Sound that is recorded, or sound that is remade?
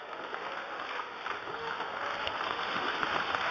remade